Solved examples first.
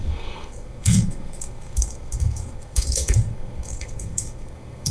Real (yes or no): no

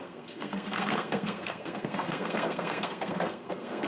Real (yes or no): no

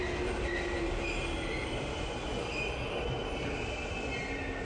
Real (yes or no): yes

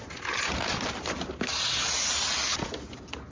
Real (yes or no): yes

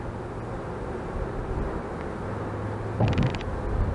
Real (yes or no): yes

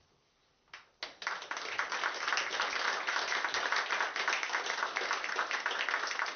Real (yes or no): yes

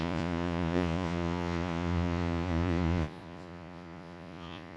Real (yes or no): no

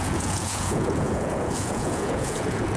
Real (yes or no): no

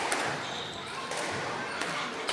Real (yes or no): no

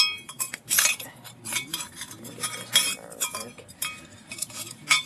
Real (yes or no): no